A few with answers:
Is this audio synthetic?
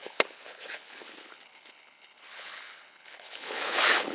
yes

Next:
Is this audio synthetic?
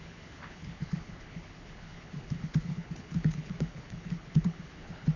yes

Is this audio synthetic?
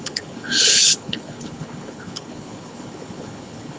yes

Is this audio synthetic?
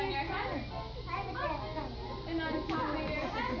no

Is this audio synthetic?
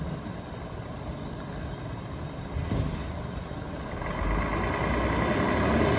no